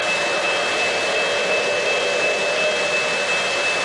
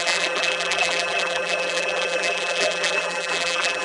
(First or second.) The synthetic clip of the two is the second